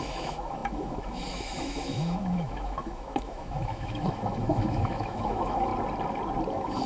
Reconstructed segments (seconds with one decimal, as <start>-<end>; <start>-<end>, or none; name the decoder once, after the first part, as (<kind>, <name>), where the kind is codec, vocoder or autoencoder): 0.0-5.7 (autoencoder, DAC-VAE); 6.5-6.9